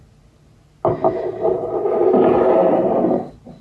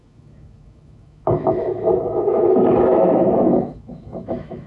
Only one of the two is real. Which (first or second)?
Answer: first